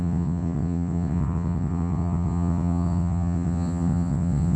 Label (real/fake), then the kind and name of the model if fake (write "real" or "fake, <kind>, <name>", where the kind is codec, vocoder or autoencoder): fake, vocoder, WaveNeXt